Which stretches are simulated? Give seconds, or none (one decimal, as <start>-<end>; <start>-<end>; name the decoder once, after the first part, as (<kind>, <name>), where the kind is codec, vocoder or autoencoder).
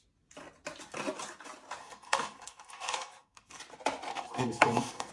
1.8-3.6 (codec, SNAC); 4.1-5.1